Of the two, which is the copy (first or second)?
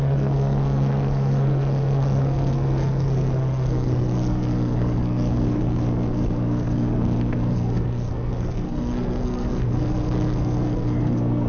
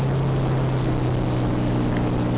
first